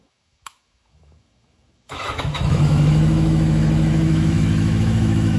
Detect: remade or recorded remade